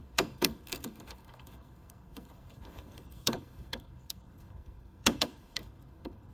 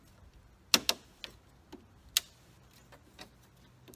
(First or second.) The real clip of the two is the second